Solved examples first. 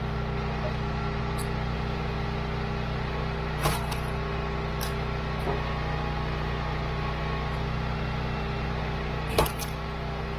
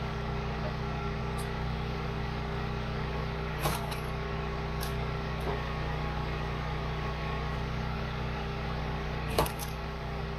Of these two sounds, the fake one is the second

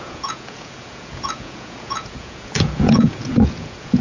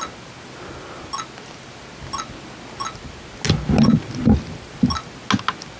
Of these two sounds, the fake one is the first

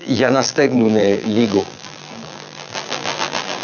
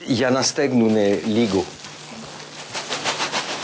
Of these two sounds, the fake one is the first